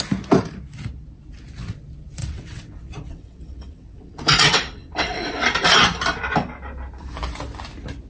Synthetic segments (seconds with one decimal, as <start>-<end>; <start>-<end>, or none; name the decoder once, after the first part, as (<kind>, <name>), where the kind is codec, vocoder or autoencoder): 2.2-5.4 (vocoder, WaveNeXt)